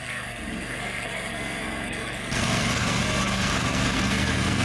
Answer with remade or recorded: remade